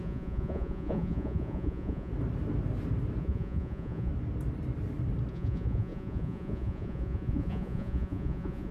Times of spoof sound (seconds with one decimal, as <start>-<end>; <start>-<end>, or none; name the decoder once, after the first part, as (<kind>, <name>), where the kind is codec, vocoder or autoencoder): 0.0-2.1 (vocoder, Vocos); 3.2-4.1; 5.3-8.7

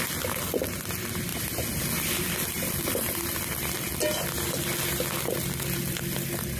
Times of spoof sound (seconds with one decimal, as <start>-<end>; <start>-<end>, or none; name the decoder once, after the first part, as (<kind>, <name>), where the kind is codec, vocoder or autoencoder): none

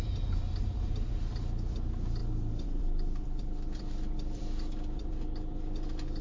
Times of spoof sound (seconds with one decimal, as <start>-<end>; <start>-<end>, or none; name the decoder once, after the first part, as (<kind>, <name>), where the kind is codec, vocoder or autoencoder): 2.2-5.1 (vocoder, BigVGAN v2)

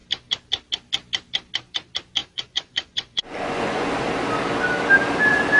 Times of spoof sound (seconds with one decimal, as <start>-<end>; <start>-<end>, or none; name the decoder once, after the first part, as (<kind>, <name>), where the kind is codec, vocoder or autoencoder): 2.2-3.9 (vocoder, Vocos)